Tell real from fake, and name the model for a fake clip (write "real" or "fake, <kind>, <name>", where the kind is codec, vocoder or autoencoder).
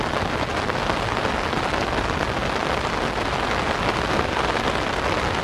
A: real